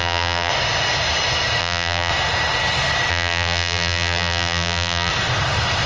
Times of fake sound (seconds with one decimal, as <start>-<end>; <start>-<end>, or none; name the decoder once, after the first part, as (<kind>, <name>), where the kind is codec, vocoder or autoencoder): 0.0-0.5 (vocoder, BigVGAN v2); 1.6-2.1; 3.1-5.1